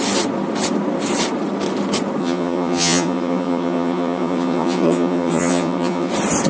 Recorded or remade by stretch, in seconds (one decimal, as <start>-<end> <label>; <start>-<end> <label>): 0.0-2.2 recorded; 2.2-6.1 remade; 6.1-6.5 recorded